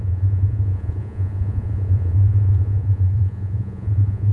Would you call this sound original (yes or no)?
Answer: no